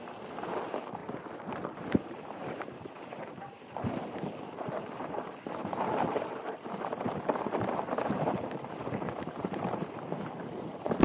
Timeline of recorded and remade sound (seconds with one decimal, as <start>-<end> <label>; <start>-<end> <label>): 0.0-11.0 remade

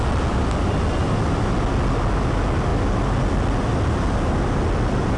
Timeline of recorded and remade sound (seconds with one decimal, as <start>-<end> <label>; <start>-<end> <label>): 0.0-5.2 recorded

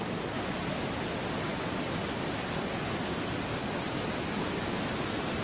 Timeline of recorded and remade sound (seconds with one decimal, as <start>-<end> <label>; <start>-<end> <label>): 0.0-5.4 recorded

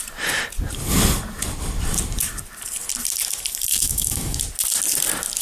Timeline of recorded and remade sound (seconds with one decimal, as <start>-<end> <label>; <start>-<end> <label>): 0.0-3.7 recorded; 3.7-4.4 remade; 4.4-5.4 recorded

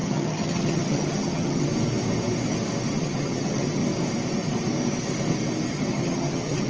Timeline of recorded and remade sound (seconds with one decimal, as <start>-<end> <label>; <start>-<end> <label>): 0.0-1.7 remade; 1.7-2.9 recorded; 2.9-3.8 remade; 3.8-5.7 recorded; 5.7-6.7 remade

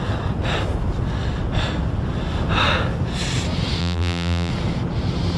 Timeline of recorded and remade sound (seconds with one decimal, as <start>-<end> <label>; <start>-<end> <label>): 0.0-3.8 recorded; 3.8-4.5 remade; 4.5-5.4 recorded

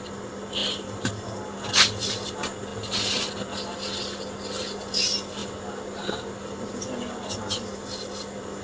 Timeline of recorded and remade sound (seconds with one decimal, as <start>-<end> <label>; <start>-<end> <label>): 0.0-8.6 recorded

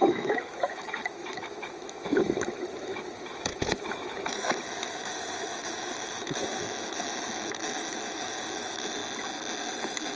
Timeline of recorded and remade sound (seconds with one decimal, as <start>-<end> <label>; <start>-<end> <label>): 0.0-9.0 remade; 9.0-9.6 recorded; 9.6-10.2 remade